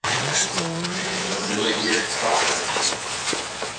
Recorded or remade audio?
remade